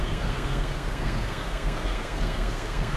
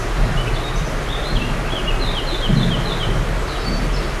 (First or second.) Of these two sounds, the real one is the second